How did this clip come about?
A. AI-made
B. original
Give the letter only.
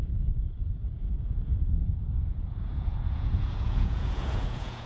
A